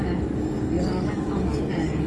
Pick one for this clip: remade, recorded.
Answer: remade